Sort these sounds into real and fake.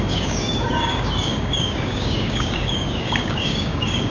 fake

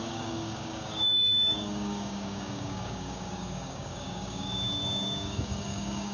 fake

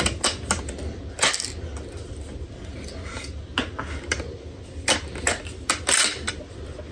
real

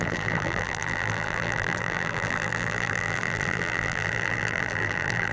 fake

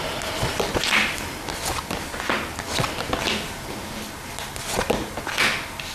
real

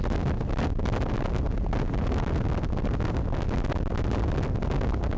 real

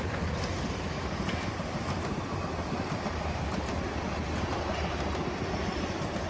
real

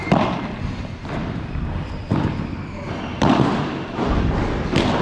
real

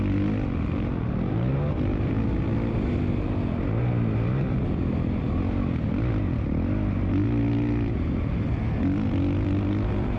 real